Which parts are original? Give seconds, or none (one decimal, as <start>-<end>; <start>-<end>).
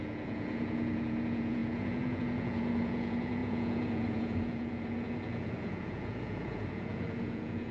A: none